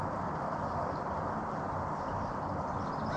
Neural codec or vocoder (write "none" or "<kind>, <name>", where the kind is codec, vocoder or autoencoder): none